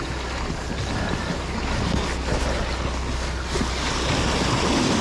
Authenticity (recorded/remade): recorded